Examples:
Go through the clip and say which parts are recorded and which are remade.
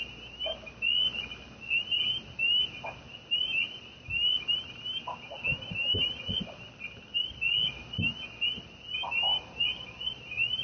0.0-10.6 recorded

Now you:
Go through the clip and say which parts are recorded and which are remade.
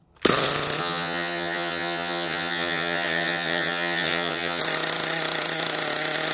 0.0-0.8 recorded; 0.8-4.6 remade; 4.6-6.3 recorded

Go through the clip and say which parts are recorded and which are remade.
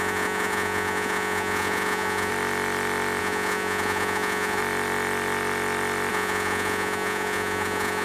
0.0-2.3 remade; 2.3-3.2 recorded; 3.2-4.6 remade; 4.6-6.1 recorded; 6.1-8.0 remade